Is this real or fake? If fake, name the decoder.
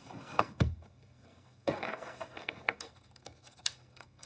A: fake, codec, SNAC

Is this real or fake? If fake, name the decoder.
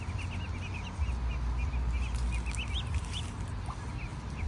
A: real